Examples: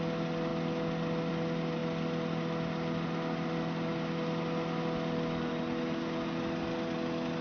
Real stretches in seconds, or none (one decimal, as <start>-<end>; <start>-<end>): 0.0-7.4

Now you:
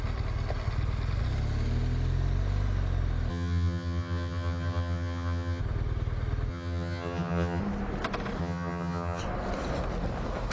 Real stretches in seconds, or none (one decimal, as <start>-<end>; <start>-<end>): 0.0-3.3; 5.6-6.5; 7.6-8.4; 9.2-10.5

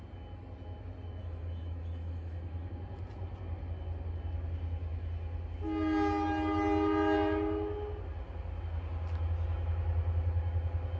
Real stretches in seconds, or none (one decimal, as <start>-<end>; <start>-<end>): 0.0-1.2; 2.7-11.0